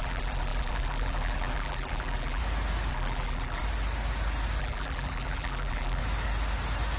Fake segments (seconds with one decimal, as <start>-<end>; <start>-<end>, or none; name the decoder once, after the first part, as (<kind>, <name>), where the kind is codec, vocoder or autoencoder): 0.0-2.4 (vocoder, BigVGAN v2); 2.9-3.6; 4.6-6.0